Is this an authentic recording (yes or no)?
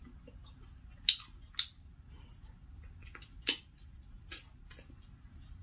yes